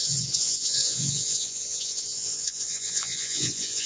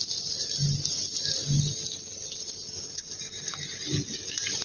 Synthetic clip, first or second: first